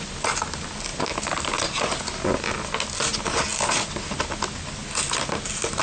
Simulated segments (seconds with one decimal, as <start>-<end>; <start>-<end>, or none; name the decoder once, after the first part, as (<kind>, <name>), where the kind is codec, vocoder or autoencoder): 0.9-1.5 (vocoder, BigVGAN v2)